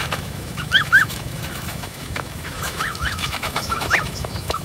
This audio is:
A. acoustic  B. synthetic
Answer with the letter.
B